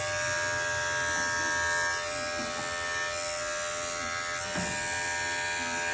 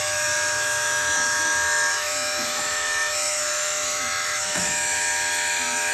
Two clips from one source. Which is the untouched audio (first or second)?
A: first